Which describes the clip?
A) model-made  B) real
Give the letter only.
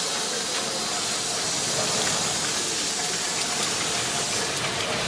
B